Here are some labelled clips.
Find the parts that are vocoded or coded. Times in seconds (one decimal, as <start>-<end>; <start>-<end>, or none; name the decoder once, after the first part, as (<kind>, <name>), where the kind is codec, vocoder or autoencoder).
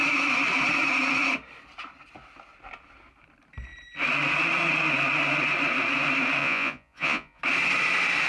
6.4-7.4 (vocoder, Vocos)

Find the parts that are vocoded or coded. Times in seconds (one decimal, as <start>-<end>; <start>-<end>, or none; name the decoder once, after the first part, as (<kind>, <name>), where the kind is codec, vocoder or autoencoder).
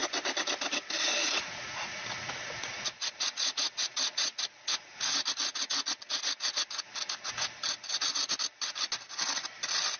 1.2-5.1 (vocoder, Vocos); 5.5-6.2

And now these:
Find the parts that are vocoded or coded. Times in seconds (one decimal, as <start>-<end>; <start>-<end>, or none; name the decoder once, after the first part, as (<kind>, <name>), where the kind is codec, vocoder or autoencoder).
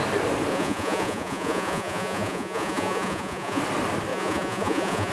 0.5-3.6 (vocoder, Vocos); 4.1-5.1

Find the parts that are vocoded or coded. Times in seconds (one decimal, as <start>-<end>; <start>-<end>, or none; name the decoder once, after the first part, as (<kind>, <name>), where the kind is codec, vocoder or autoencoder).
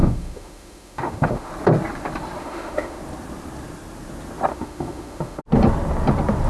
0.0-1.5 (autoencoder, DAC-VAE); 2.4-3.0; 4.5-5.4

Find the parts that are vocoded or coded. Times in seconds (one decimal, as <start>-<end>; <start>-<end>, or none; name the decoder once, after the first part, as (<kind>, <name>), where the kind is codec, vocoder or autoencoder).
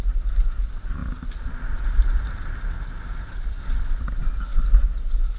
none